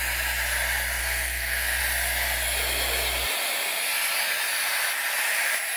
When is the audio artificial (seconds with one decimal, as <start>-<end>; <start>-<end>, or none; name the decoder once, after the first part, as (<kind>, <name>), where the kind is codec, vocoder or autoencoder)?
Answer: 1.0-1.8 (codec, SNAC)